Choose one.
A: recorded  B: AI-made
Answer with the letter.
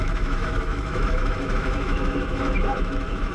B